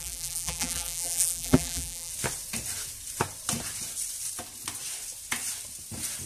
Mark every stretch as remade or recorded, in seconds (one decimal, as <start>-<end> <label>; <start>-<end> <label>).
0.0-2.1 remade; 2.1-6.3 recorded